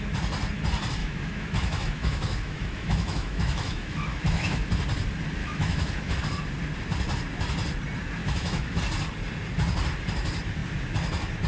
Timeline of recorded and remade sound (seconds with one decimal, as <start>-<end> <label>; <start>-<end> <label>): 0.0-1.0 recorded; 1.0-4.7 remade; 4.7-5.4 recorded; 5.4-6.2 remade; 6.2-8.2 recorded; 8.2-8.8 remade; 8.8-11.5 recorded